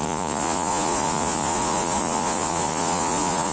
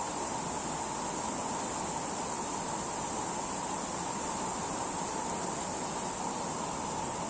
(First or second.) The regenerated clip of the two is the first